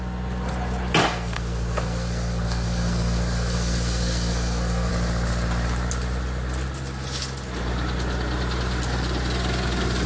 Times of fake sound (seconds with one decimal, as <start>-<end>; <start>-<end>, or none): 1.0-4.9